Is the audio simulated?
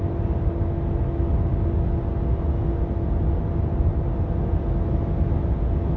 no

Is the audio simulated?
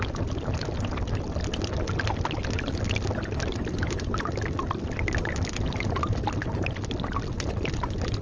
no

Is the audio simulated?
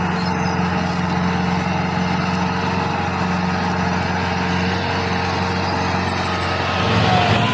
no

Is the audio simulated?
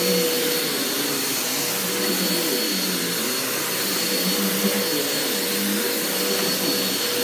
no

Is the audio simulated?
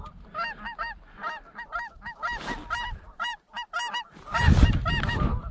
no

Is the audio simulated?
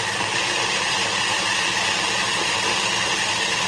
no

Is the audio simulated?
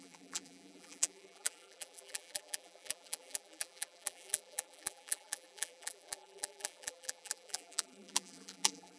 yes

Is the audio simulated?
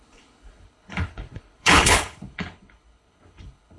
yes